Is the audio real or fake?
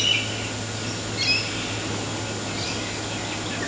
real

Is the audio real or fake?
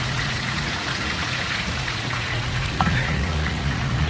fake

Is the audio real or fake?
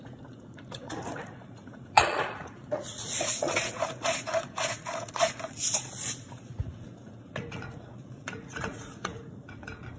fake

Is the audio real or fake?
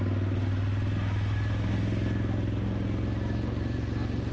real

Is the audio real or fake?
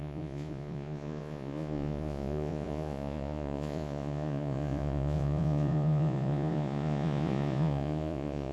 fake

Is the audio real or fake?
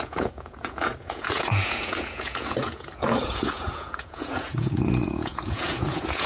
fake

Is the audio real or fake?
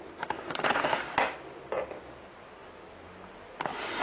real